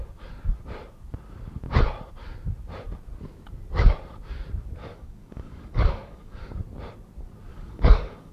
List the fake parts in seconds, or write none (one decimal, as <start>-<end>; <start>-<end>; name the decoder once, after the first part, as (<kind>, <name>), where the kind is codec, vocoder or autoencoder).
4.8-6.5 (codec, DAC); 7.5-8.3